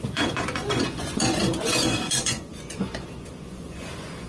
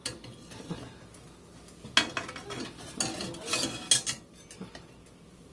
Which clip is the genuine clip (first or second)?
second